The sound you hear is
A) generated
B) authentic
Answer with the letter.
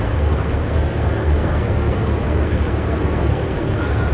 A